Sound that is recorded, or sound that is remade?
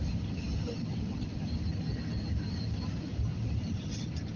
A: recorded